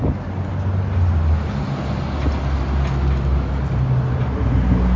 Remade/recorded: recorded